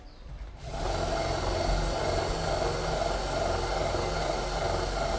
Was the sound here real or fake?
real